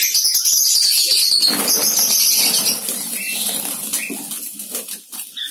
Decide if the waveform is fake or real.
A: real